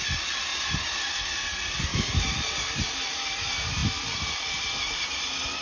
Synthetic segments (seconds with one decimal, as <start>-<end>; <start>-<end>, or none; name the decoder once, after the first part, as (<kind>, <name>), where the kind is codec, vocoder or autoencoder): none